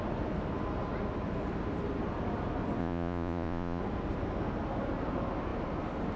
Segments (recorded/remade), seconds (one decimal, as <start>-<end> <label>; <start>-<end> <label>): 0.0-2.8 recorded; 2.8-3.8 remade; 3.8-6.2 recorded